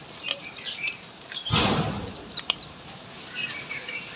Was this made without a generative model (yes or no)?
no